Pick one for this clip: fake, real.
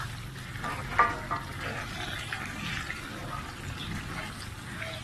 real